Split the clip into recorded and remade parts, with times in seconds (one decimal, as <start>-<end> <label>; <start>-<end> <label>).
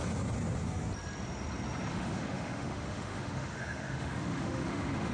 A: 0.0-1.9 recorded; 1.9-5.1 remade